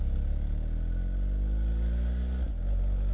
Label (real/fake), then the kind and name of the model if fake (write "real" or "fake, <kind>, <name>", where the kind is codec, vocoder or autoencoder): real